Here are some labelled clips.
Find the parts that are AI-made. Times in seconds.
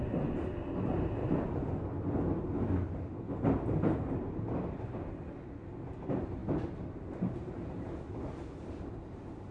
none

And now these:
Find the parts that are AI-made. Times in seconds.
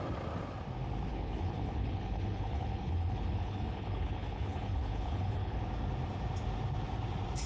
1.1-5.6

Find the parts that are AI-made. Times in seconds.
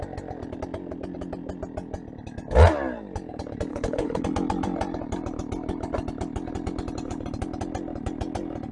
3.7-4.2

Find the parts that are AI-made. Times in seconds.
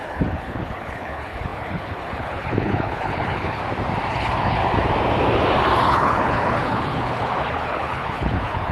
0.0-3.6; 4.1-4.6; 5.8-8.7